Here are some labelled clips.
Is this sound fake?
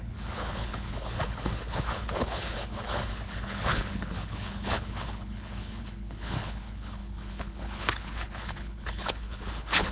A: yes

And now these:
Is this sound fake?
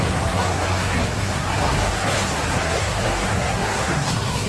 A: yes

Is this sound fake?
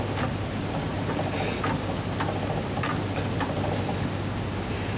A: no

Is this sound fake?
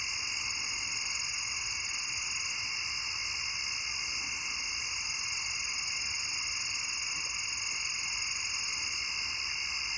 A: no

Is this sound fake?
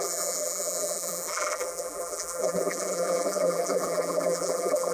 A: yes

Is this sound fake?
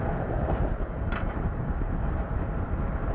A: no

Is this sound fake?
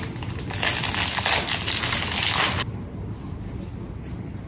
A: no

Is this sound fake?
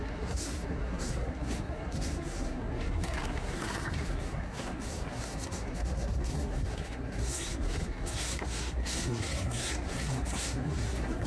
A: yes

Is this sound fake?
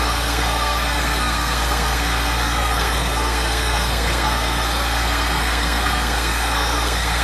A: yes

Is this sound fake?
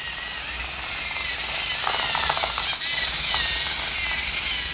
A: no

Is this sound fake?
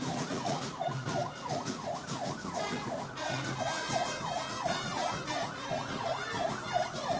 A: yes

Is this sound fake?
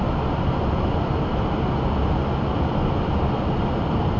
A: no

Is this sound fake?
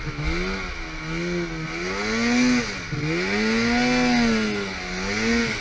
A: no